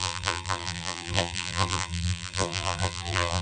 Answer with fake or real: fake